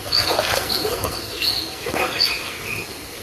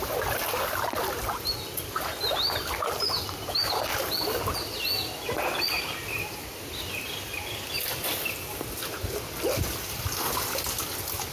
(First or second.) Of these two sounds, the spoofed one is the first